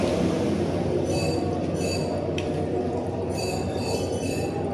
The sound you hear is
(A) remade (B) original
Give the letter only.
B